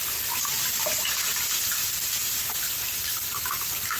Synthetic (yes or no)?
no